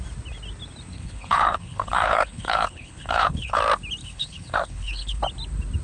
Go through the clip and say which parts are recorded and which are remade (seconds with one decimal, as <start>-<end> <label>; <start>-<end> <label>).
0.0-0.9 recorded; 0.9-3.6 remade; 3.6-4.0 recorded; 4.0-5.2 remade; 5.2-5.8 recorded